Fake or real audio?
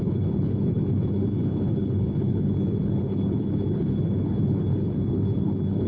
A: fake